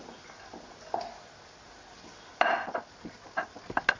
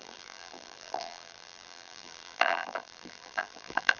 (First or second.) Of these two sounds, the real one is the first